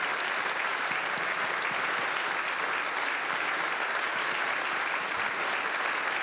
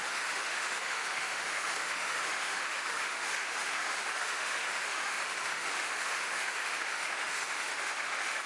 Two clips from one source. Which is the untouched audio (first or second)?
first